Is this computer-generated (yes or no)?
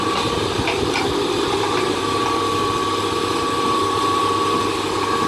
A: no